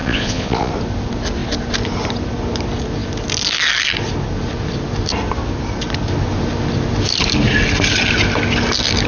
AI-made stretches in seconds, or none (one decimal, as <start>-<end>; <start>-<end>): 0.0-0.7